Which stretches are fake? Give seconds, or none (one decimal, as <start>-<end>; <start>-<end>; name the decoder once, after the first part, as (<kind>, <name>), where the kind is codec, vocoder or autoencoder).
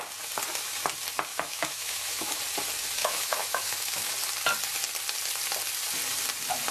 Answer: 1.3-2.4 (autoencoder, DAC-VAE); 3.0-4.1